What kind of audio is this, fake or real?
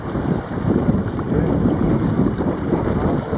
fake